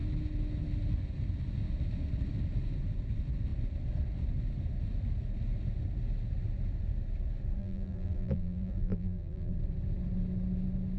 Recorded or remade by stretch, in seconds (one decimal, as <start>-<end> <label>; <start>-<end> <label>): 0.0-7.6 recorded; 7.6-9.5 remade; 9.5-11.0 recorded

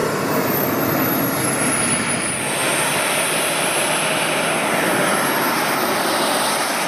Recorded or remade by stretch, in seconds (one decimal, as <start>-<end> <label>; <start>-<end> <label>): 0.0-6.9 recorded

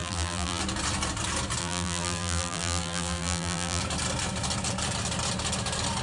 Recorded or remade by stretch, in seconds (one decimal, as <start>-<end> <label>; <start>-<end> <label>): 0.0-0.6 remade; 0.6-1.6 recorded; 1.6-3.8 remade; 3.8-6.0 recorded

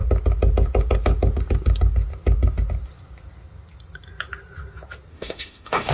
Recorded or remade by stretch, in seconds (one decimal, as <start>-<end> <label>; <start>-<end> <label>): 0.0-5.1 recorded; 5.1-5.9 remade

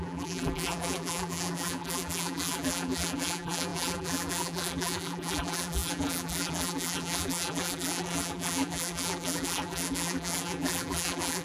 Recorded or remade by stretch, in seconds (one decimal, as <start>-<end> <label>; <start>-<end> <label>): 0.0-11.4 remade

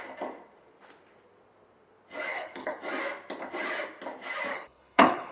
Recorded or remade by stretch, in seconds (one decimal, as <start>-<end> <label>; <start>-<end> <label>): 0.0-2.3 recorded; 2.3-2.8 remade; 2.8-4.5 recorded; 4.5-5.3 remade

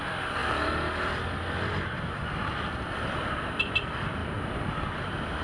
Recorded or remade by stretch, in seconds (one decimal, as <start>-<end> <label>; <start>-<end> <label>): 0.0-5.4 recorded